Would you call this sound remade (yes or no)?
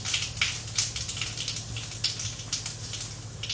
no